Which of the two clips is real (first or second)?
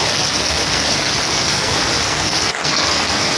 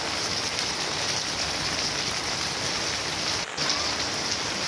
second